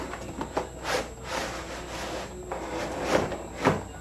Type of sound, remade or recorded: recorded